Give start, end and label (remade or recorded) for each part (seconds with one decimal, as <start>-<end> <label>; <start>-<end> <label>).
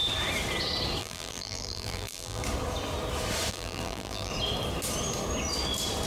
0.0-1.0 recorded; 1.0-2.4 remade; 2.4-3.5 recorded; 3.5-4.3 remade; 4.3-6.1 recorded